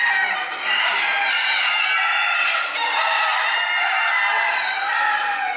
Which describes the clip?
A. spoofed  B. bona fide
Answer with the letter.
B